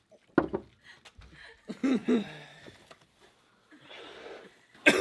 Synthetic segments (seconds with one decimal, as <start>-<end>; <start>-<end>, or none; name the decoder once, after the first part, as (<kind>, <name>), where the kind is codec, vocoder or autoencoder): 2.0-5.0 (vocoder, BigVGAN v2)